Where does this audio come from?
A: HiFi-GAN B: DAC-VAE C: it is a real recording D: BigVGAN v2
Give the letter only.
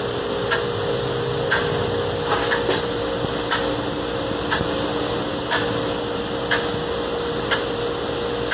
C